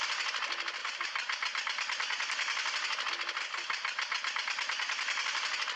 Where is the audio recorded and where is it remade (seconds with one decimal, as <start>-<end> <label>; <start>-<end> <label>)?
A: 0.0-5.8 recorded